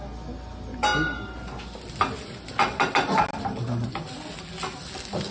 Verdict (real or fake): real